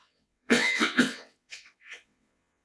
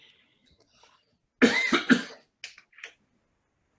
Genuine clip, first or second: second